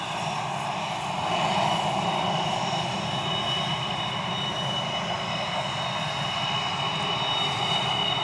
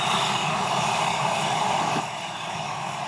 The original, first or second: first